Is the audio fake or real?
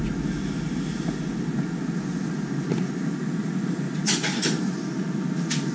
real